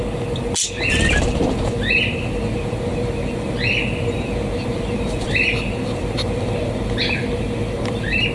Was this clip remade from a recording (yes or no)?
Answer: no